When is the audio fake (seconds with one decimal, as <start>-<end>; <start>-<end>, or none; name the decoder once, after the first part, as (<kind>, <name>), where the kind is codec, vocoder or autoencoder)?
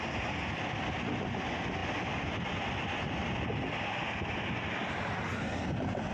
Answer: none